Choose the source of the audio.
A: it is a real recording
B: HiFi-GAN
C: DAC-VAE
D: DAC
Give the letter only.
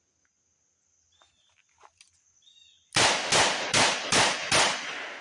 A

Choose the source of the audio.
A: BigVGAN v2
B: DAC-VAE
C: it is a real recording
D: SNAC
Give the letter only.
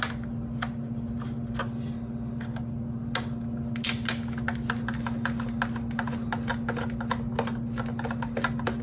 C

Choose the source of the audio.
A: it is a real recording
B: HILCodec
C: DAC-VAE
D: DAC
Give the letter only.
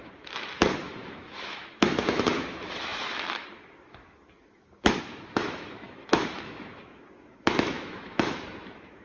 C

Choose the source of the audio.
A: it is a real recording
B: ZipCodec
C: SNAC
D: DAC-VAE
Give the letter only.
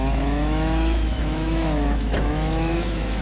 D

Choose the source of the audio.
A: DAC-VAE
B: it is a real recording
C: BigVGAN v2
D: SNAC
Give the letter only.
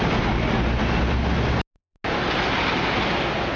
B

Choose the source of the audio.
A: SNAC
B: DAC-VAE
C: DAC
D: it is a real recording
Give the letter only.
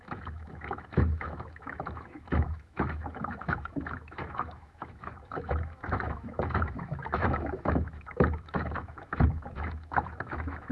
B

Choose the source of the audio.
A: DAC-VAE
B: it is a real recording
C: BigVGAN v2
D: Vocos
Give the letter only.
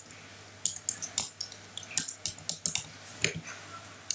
B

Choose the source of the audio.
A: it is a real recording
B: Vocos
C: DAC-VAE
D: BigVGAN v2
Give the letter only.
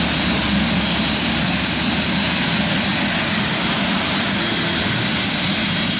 A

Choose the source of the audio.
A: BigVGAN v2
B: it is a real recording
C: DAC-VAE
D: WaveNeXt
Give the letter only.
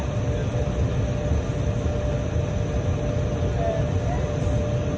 B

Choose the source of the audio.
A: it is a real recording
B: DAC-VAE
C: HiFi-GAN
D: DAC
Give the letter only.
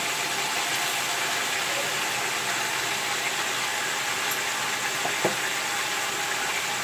A